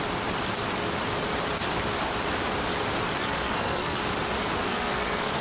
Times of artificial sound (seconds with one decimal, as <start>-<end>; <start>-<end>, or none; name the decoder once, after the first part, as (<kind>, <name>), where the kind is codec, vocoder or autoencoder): 3.2-4.0 (codec, SNAC); 4.7-5.4